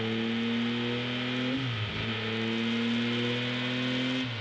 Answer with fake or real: real